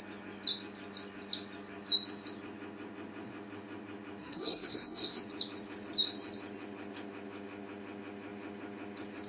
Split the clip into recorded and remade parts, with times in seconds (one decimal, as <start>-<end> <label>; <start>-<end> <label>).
0.0-4.2 recorded; 4.2-5.2 remade; 5.2-9.3 recorded